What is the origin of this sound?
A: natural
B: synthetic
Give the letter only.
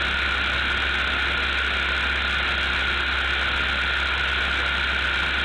A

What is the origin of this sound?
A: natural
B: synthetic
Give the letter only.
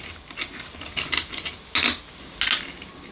A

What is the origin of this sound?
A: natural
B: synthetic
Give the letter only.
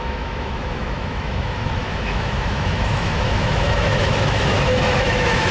B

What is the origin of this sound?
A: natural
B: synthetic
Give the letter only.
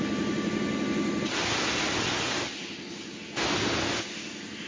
A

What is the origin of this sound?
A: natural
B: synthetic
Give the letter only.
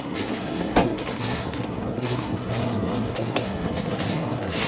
B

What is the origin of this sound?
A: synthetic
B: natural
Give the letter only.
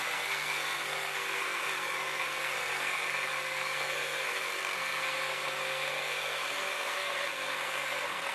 A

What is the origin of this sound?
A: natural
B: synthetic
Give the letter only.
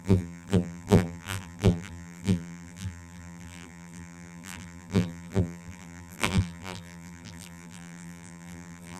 B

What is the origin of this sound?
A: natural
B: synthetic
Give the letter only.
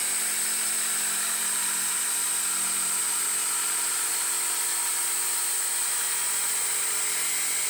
A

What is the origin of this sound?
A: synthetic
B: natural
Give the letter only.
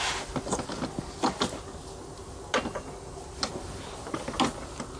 B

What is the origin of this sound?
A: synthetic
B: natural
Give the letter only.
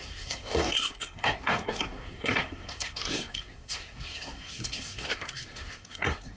A